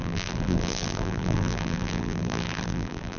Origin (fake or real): fake